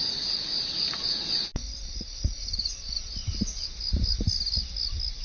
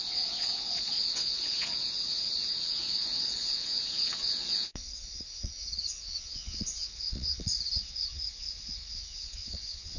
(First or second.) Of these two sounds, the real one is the first